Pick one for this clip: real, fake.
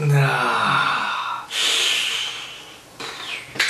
real